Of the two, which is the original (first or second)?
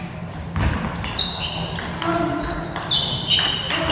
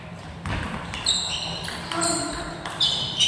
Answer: first